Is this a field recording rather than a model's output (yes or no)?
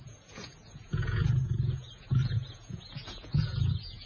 no